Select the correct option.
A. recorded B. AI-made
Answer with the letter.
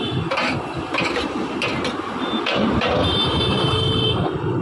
B